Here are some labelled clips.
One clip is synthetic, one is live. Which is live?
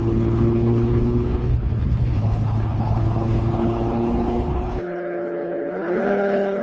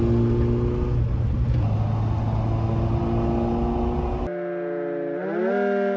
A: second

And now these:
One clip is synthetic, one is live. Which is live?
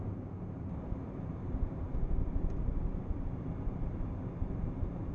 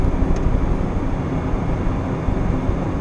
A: second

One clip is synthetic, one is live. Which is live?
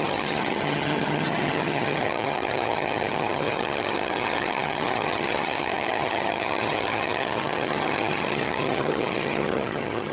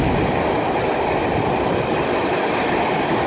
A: second